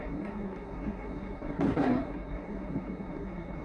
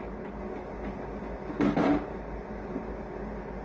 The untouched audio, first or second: second